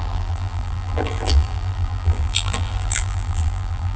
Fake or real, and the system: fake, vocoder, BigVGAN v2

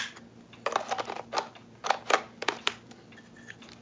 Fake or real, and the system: real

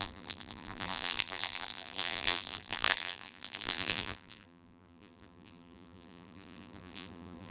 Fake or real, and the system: fake, vocoder, BigVGAN v2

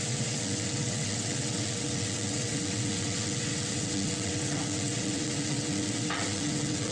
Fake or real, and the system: fake, vocoder, WaveNeXt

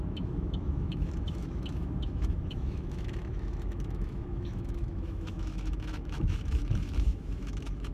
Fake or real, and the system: fake, autoencoder, DAC-VAE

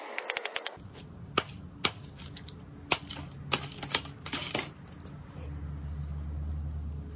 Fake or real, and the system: real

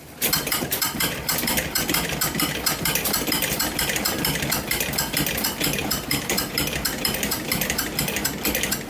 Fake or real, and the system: fake, vocoder, BigVGAN v2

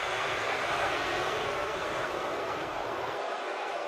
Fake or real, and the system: fake, codec, SNAC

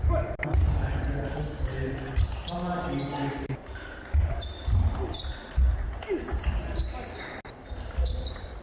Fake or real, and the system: real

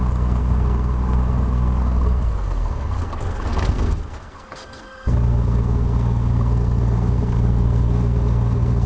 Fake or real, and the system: fake, codec, SNAC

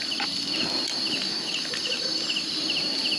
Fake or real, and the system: real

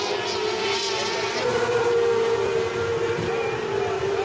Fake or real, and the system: real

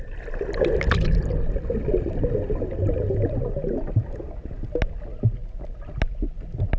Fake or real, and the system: real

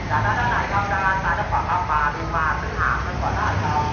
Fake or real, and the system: real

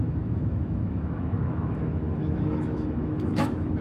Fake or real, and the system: fake, autoencoder, DAC-VAE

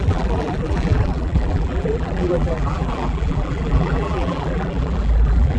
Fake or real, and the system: fake, vocoder, BigVGAN v2